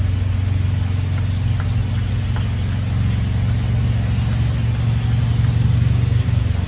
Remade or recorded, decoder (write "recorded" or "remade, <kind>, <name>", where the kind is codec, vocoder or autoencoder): recorded